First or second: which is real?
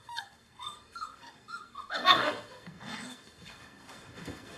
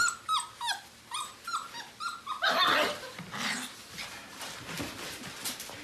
second